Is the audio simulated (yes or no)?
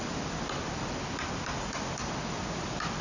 no